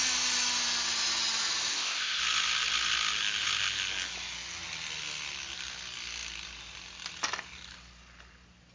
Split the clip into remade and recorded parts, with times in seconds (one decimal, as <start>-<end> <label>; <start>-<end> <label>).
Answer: 0.0-1.7 recorded; 1.7-2.2 remade; 2.2-8.7 recorded